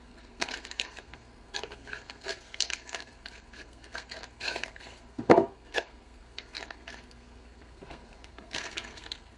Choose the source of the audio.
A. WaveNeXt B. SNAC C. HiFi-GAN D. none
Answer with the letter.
B